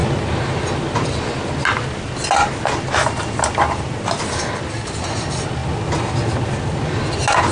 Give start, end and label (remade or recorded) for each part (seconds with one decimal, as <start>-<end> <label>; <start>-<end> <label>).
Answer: 0.0-7.5 recorded